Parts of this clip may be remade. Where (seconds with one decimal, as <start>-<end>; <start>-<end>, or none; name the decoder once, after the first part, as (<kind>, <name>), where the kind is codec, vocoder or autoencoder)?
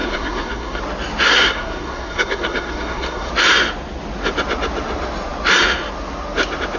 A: 0.0-0.8 (codec, SNAC); 1.3-3.3